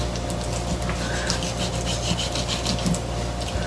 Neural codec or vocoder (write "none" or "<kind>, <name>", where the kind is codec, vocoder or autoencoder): none